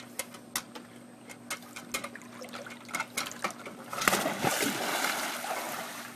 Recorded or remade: recorded